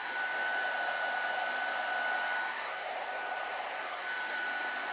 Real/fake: real